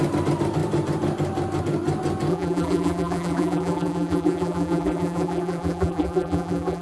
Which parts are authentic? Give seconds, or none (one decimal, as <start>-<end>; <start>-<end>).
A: 0.0-2.3